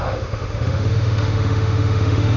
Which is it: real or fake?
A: fake